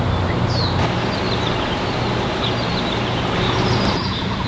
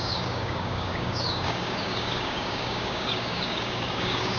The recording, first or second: first